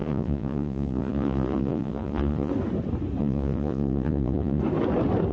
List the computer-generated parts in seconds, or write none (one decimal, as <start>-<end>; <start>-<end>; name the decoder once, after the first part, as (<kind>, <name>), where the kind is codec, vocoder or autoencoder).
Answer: 0.0-2.5 (vocoder, Vocos); 3.2-4.6